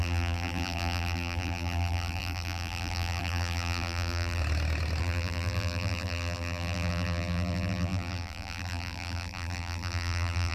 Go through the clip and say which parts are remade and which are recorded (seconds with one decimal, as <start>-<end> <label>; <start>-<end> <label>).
0.0-4.4 remade; 4.4-5.0 recorded; 5.0-10.5 remade